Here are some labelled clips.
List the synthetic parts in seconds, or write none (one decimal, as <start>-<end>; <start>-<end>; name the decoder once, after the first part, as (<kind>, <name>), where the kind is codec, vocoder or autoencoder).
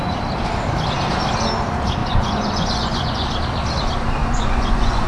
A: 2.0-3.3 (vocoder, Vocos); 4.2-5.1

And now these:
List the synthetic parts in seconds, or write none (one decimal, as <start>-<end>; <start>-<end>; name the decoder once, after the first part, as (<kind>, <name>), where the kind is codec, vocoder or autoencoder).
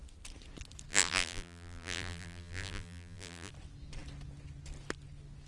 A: 0.9-3.5 (vocoder, BigVGAN v2)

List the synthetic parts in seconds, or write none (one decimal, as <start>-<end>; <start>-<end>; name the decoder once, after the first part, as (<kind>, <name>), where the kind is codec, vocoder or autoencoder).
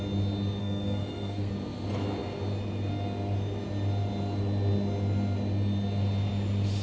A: 0.6-1.5 (codec, SNAC)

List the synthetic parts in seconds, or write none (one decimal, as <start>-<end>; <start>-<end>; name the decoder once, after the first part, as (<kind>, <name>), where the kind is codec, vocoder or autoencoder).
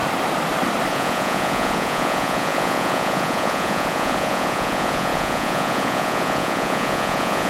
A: 0.9-7.5 (vocoder, Vocos)